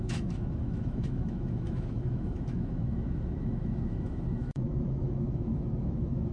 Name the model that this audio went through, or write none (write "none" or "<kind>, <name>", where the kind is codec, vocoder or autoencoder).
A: autoencoder, DAC-VAE